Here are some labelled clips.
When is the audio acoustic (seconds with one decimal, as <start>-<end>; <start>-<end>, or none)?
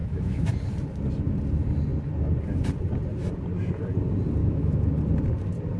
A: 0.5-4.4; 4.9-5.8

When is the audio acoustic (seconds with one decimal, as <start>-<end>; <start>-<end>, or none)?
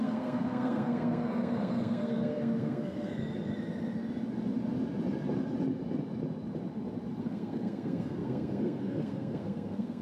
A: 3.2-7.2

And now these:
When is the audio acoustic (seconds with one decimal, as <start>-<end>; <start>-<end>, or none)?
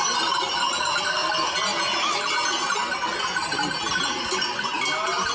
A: 0.0-5.3